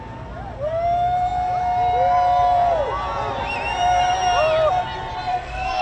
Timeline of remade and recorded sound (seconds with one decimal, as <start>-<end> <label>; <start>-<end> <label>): 0.0-5.3 recorded; 5.3-5.8 remade